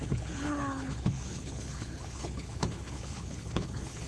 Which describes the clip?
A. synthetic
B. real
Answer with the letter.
A